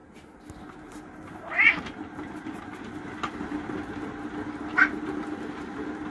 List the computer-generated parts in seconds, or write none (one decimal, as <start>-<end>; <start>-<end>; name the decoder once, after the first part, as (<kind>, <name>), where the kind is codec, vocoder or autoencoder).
none